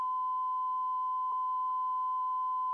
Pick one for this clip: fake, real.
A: real